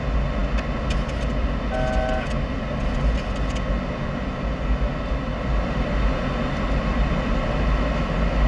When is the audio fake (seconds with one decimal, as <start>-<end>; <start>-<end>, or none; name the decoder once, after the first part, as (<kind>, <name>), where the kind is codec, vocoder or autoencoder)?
none